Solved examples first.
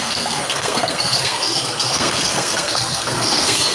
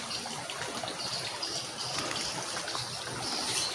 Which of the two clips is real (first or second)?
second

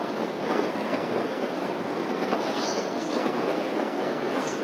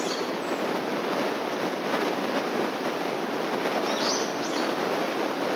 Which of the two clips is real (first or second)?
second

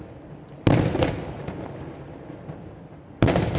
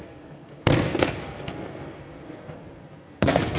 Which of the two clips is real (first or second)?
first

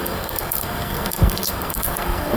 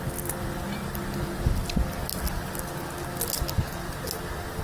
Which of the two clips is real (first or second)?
second